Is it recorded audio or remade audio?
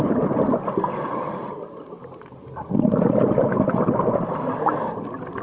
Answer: recorded